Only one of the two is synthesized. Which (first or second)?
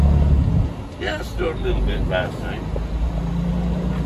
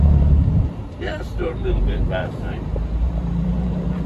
second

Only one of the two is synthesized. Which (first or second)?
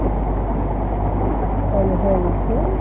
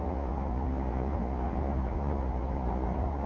second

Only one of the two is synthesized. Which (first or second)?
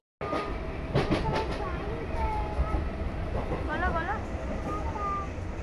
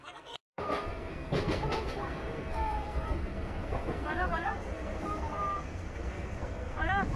second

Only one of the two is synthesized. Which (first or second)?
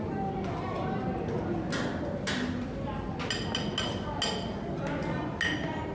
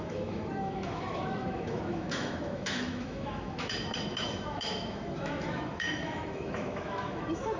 second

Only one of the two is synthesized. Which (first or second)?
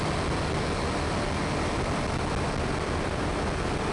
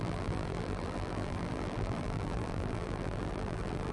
second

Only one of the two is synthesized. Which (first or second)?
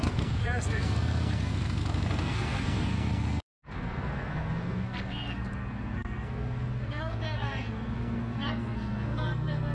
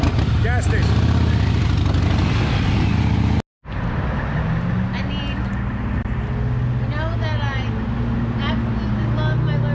first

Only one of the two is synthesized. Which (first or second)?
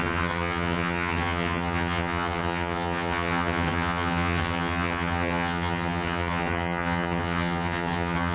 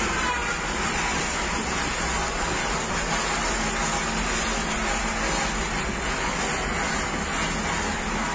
first